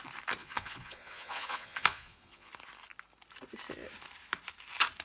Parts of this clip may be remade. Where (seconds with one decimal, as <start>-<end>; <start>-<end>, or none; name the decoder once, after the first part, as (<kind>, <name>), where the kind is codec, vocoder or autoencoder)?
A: 0.4-2.5 (vocoder, Vocos)